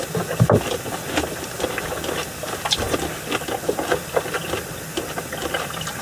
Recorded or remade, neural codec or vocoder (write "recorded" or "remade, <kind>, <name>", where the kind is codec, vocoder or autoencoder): recorded